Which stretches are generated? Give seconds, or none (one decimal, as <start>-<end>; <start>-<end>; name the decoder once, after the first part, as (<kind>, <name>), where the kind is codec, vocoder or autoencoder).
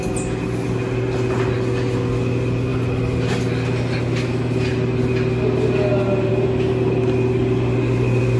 none